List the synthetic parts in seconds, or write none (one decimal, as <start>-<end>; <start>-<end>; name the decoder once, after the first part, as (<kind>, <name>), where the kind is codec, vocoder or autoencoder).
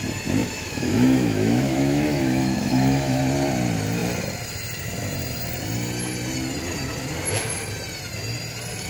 0.4-3.2 (autoencoder, DAC-VAE)